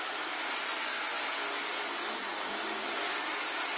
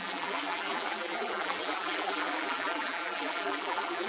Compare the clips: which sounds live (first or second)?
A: first